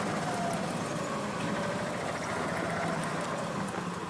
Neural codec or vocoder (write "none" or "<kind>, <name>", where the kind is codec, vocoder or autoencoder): none